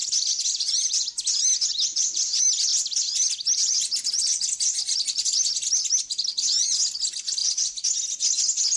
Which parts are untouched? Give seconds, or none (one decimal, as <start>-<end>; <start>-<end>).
0.0-8.8